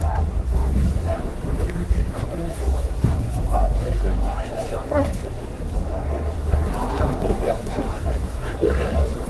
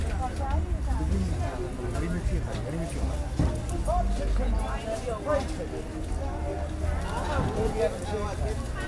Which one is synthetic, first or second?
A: first